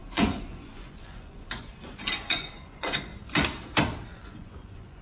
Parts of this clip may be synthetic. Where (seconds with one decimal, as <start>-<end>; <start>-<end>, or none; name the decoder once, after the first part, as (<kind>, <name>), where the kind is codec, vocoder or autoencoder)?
0.0-3.1 (vocoder, Vocos); 4.1-5.0